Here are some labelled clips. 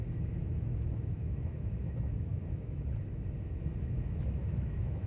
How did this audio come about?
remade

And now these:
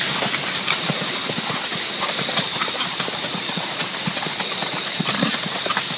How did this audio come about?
recorded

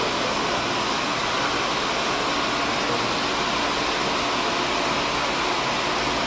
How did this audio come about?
recorded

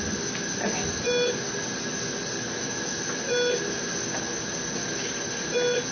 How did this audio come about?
recorded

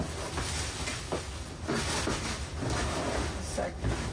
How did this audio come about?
recorded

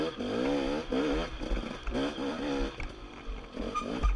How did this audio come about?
recorded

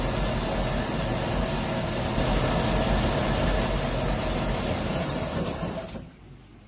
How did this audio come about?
recorded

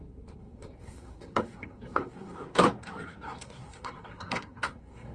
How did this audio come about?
remade